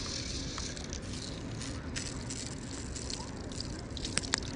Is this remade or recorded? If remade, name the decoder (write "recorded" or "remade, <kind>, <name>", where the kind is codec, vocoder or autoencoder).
recorded